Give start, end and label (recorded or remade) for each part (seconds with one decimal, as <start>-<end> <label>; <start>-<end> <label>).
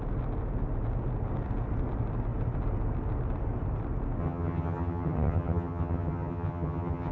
0.0-4.2 recorded; 4.2-7.1 remade